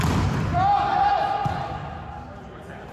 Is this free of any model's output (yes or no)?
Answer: yes